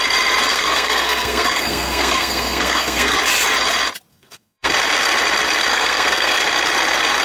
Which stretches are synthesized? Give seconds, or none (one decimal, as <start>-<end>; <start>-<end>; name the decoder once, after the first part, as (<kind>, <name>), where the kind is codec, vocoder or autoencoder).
0.5-3.2 (codec, SNAC); 4.1-4.7; 5.7-6.4